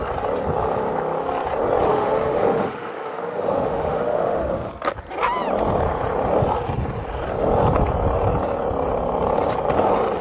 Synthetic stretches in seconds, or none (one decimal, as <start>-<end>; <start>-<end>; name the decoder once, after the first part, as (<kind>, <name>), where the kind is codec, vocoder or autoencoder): 1.9-4.7 (autoencoder, DAC-VAE)